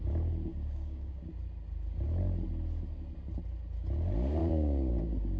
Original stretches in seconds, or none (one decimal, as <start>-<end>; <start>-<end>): 0.0-0.5; 1.3-4.4; 4.9-5.4